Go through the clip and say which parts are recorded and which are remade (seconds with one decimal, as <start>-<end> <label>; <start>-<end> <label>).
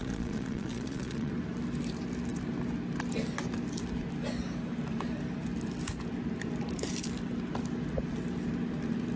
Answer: 0.0-1.3 remade; 1.3-9.2 recorded